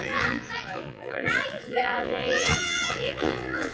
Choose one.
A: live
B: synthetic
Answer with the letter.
B